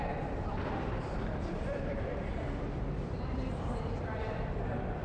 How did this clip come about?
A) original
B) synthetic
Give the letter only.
B